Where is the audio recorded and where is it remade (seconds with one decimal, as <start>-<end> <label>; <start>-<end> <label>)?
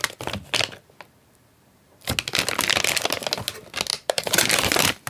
0.0-3.9 recorded; 3.9-5.1 remade